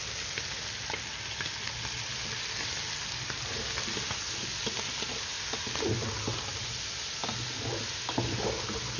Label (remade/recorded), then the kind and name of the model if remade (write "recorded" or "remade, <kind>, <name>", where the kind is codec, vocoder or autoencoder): recorded